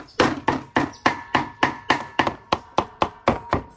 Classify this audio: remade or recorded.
recorded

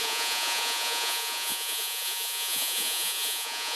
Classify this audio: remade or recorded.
remade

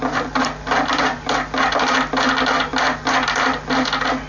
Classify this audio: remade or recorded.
recorded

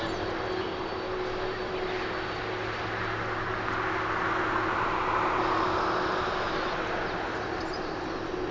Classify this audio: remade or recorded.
recorded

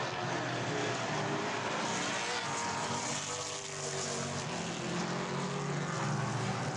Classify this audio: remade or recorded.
recorded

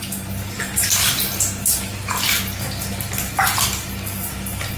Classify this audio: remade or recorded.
recorded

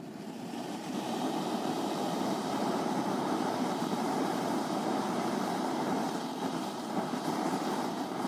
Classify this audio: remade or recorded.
remade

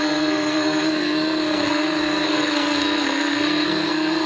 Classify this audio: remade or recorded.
remade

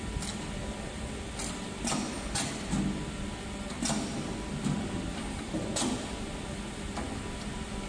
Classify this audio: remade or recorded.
recorded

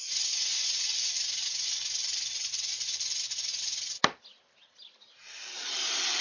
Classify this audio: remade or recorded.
recorded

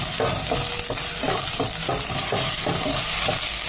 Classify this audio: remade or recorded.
recorded